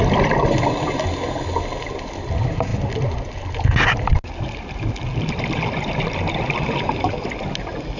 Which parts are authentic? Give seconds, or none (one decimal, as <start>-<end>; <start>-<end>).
0.0-8.0